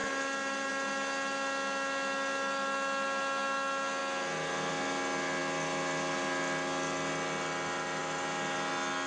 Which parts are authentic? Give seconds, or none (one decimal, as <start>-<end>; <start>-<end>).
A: 0.0-8.0; 8.7-9.1